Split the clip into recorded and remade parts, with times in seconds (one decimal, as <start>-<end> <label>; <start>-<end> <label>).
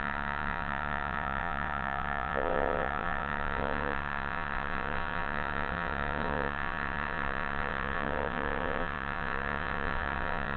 0.0-10.6 remade